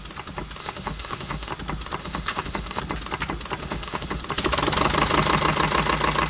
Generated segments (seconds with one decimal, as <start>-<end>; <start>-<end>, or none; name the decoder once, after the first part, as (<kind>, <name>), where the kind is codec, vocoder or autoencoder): 0.6-1.5 (autoencoder, DAC-VAE); 2.0-2.8; 3.6-4.2